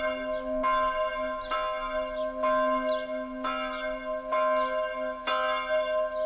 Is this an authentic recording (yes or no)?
yes